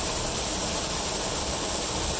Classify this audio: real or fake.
fake